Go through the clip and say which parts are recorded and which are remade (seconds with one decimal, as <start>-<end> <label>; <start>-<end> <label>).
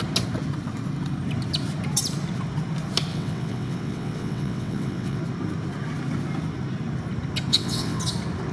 0.0-3.1 recorded; 3.1-5.2 remade; 5.2-7.5 recorded; 7.5-8.0 remade; 8.0-8.5 recorded